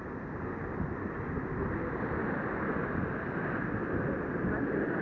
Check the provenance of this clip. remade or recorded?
recorded